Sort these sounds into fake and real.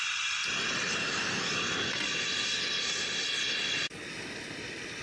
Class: real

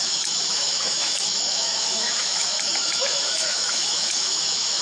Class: fake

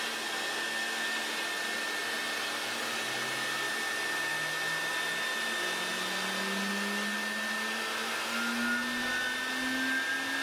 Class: real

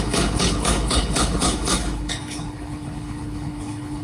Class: fake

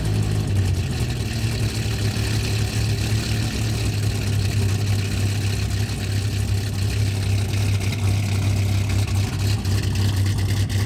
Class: real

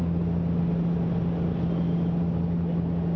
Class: real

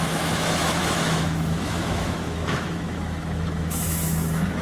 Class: fake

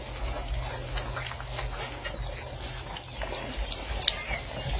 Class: real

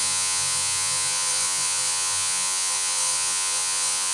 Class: fake